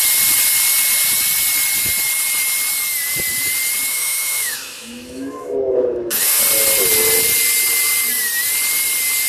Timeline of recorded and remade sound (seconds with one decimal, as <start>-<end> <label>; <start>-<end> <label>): 0.0-3.9 recorded; 3.9-6.4 remade; 6.4-9.3 recorded

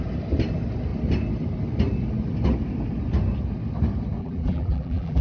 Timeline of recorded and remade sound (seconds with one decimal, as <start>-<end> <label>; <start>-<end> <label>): 0.0-4.2 recorded; 4.2-5.2 remade

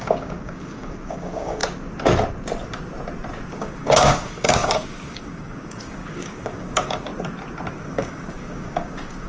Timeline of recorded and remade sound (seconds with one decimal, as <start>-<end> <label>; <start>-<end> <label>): 0.0-1.6 remade; 1.6-3.5 recorded; 3.5-7.1 remade; 7.1-7.7 recorded; 7.7-9.3 remade

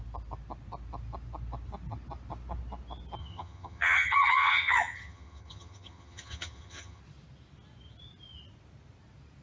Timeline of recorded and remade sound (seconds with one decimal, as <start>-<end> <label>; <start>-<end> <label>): 0.0-3.2 recorded; 3.2-7.0 remade; 7.0-9.4 recorded

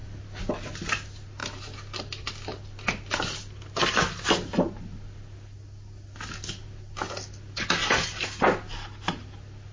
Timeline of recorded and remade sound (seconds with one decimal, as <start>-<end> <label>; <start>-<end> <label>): 0.0-0.5 remade; 0.5-7.8 recorded; 7.8-8.4 remade; 8.4-9.7 recorded